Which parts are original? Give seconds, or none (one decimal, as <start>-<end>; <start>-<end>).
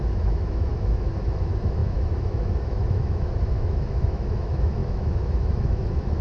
none